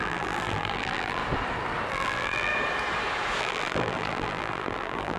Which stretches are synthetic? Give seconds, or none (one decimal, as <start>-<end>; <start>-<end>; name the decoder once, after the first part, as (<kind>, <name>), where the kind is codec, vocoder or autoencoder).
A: 0.0-1.2 (vocoder, BigVGAN v2); 1.9-2.5; 3.4-5.2